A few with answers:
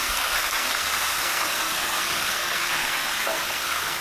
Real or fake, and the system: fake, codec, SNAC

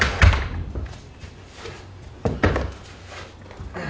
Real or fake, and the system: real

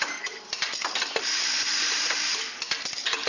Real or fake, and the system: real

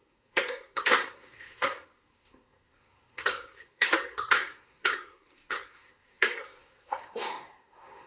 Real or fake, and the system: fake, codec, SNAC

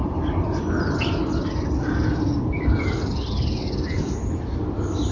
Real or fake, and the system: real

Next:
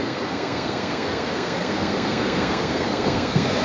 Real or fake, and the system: fake, codec, SNAC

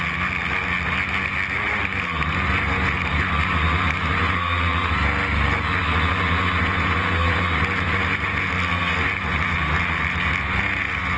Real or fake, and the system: real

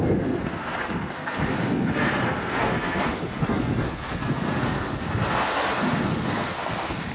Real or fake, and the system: fake, codec, SNAC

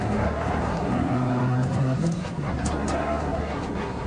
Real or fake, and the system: fake, codec, SNAC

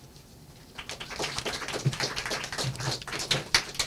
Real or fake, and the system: real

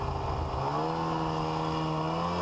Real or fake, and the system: real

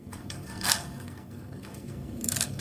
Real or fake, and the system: fake, codec, SNAC